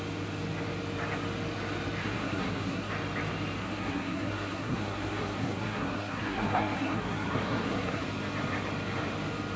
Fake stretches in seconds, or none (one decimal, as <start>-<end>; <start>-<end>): 2.0-2.9; 3.6-8.0